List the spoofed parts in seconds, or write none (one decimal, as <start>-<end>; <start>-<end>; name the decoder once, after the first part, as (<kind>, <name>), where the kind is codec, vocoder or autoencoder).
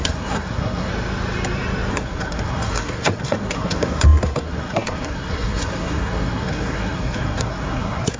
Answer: 0.0-0.9 (codec, SNAC); 1.9-8.2